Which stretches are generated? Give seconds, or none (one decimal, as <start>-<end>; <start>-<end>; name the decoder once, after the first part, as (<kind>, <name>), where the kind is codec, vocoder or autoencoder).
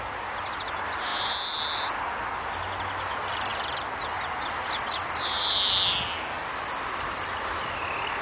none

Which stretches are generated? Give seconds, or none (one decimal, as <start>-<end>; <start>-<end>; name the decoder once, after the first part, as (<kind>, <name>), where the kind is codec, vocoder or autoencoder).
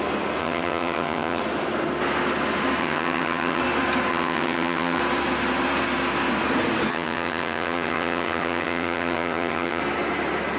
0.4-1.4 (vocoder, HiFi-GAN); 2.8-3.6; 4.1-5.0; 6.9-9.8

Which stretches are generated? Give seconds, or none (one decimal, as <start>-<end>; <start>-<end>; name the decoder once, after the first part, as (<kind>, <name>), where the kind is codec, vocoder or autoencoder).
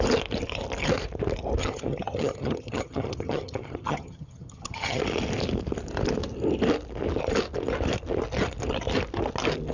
1.6-5.0 (vocoder, HiFi-GAN)